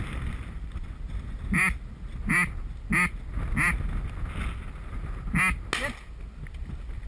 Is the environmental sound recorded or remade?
recorded